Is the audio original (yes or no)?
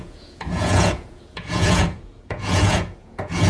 no